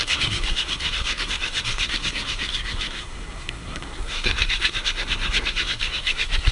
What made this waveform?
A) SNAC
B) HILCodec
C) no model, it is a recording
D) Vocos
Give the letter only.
A